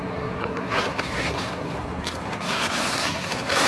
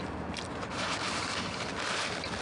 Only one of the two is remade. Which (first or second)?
first